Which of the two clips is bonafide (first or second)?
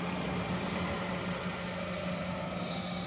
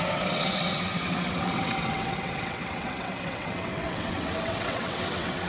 first